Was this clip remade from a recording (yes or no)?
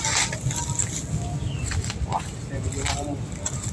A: no